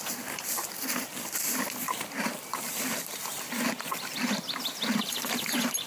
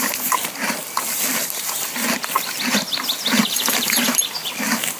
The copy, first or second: first